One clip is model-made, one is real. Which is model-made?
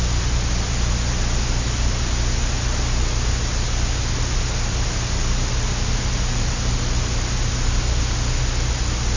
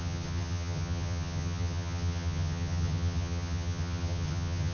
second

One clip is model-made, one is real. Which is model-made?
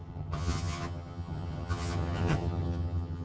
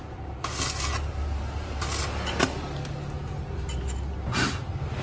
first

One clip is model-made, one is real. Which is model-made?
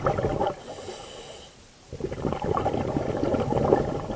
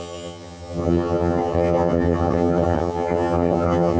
second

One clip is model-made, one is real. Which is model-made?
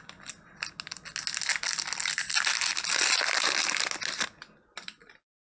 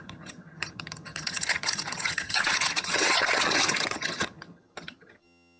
second